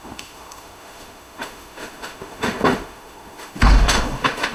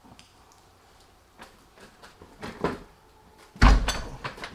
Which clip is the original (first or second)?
second